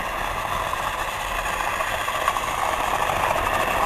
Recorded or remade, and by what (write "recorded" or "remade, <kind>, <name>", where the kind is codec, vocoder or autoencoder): recorded